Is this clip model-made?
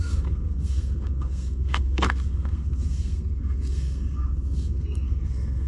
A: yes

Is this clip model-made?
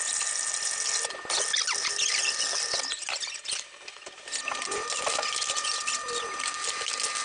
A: no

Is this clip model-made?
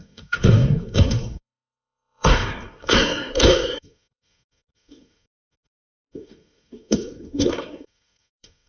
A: yes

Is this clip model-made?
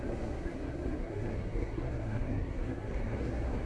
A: yes